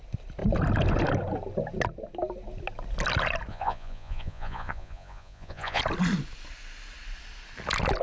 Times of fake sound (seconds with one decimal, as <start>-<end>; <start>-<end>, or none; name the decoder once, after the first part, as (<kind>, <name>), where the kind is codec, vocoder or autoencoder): 3.5-5.8 (vocoder, Vocos)